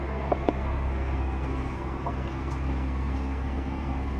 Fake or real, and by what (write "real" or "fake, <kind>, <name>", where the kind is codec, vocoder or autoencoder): fake, codec, SNAC